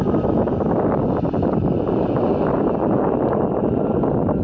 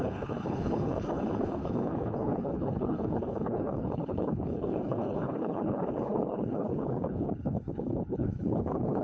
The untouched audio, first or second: first